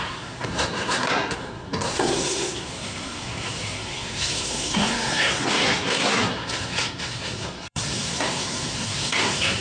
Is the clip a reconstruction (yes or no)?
yes